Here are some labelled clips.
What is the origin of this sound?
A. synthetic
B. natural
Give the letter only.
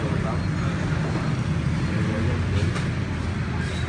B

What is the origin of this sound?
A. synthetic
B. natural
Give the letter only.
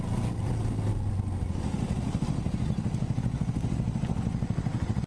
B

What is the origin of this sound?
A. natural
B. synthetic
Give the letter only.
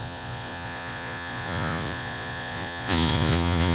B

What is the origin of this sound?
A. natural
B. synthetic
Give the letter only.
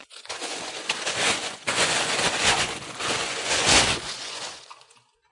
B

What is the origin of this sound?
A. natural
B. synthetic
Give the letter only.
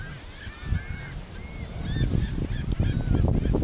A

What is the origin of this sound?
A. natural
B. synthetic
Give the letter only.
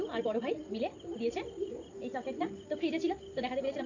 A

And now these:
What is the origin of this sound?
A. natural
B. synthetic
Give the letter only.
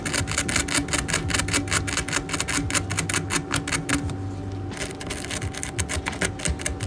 A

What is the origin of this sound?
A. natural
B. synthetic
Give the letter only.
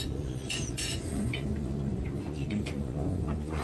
B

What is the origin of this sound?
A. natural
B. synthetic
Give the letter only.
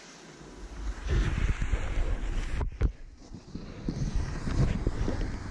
A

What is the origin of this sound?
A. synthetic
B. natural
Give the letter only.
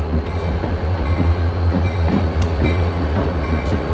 A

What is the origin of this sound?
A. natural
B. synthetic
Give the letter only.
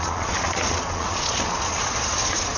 B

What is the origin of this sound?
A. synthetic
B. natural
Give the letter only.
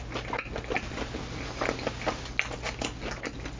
B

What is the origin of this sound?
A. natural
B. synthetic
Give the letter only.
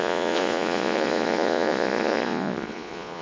B